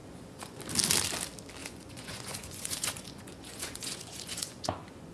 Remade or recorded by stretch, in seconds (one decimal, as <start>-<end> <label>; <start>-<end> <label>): 0.0-0.6 remade; 0.6-1.6 recorded; 1.6-5.1 remade